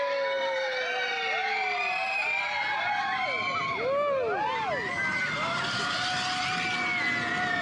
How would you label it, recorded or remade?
recorded